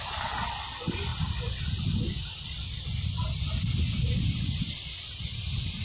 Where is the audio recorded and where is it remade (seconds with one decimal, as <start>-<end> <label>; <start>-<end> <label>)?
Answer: 0.0-5.8 recorded